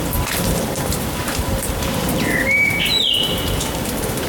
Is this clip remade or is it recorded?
remade